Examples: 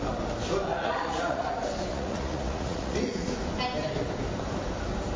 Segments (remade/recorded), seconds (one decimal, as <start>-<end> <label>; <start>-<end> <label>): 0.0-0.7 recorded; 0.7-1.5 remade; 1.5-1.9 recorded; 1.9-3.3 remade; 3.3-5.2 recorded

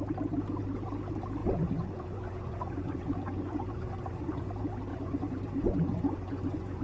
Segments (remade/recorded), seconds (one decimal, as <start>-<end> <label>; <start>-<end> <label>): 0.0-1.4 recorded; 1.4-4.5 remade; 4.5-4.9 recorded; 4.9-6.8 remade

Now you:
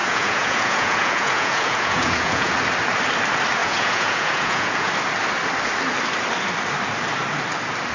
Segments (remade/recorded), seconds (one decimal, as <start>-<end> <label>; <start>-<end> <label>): 0.0-2.5 remade; 2.5-3.6 recorded; 3.6-4.9 remade; 4.9-7.9 recorded